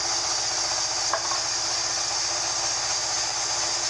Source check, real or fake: real